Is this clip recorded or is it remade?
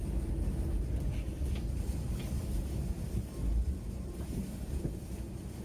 recorded